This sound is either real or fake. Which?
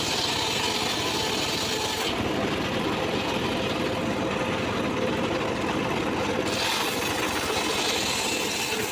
real